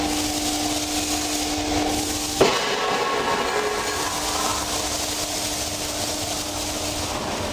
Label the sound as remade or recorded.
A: recorded